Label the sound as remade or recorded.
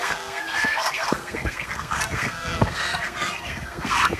remade